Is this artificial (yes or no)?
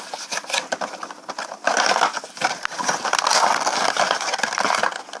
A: no